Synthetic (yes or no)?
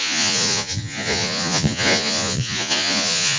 yes